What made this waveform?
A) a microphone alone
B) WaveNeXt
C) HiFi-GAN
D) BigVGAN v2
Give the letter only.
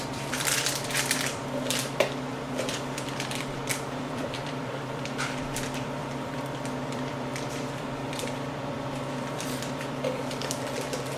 D